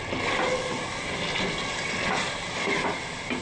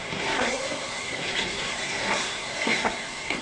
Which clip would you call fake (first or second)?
second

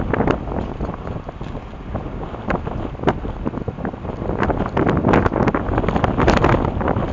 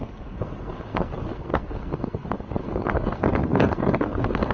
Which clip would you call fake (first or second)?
second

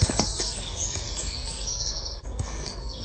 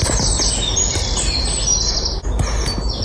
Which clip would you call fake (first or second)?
first